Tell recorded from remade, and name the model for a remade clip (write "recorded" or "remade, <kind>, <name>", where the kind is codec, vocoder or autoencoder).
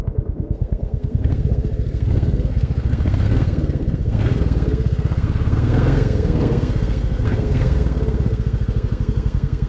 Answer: remade, codec, SNAC